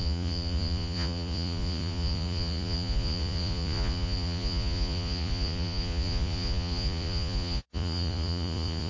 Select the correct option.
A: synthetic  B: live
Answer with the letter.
A